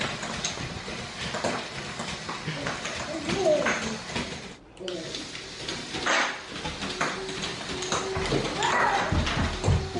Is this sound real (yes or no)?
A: yes